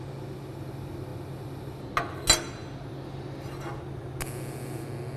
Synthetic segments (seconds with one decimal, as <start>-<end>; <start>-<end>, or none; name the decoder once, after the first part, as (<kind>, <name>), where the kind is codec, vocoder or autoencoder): none